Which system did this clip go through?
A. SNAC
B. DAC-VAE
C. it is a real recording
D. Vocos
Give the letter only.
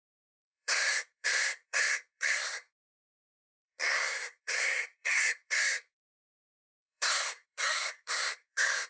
A